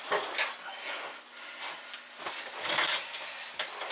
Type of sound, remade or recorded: recorded